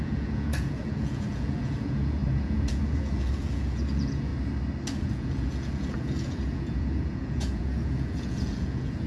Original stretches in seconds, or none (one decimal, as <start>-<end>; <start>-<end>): 4.3-5.0